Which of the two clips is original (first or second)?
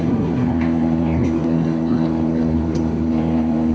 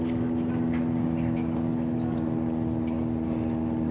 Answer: second